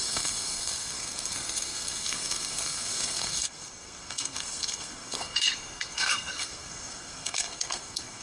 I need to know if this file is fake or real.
fake